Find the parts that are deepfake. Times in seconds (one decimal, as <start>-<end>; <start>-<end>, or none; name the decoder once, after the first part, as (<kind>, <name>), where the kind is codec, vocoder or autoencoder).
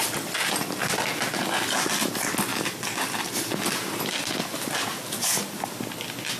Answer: none